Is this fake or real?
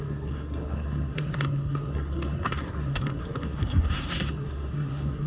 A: fake